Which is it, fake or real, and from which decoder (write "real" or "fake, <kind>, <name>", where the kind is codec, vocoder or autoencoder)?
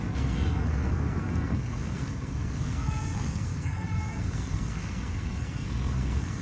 fake, codec, SNAC